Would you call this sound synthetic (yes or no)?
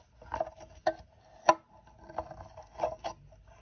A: no